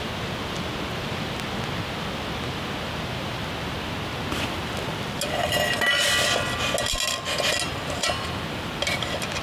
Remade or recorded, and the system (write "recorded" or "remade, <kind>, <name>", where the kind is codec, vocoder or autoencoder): recorded